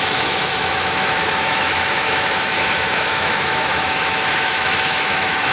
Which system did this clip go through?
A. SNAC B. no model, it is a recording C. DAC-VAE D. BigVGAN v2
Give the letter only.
C